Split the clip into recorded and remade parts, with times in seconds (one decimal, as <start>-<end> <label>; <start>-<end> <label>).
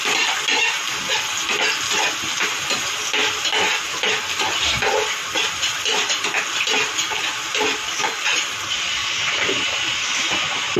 0.0-9.0 recorded; 9.0-10.0 remade; 10.0-10.8 recorded